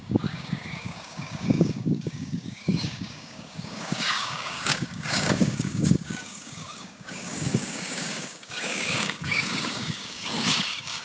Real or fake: fake